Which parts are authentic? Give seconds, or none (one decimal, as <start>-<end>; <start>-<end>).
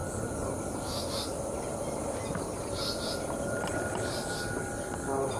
0.0-5.4